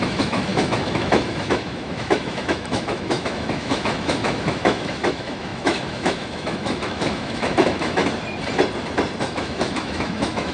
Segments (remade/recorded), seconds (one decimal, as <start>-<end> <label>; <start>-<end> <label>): 0.0-8.0 remade; 8.0-9.2 recorded; 9.2-10.5 remade